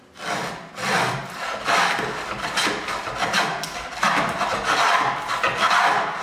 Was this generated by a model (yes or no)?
no